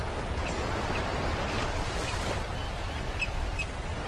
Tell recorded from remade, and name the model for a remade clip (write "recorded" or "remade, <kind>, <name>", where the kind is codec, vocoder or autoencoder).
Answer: recorded